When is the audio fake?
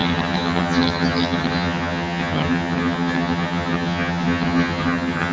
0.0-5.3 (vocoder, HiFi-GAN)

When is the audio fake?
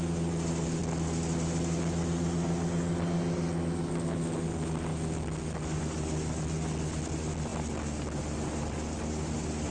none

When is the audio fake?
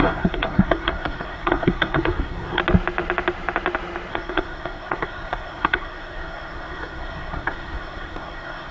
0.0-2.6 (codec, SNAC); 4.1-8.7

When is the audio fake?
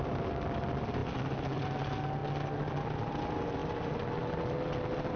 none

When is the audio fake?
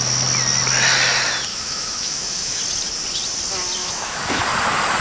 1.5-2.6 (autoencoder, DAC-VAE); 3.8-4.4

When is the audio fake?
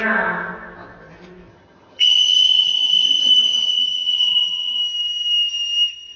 1.5-4.8 (vocoder, HiFi-GAN)